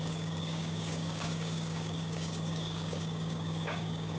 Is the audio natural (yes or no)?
no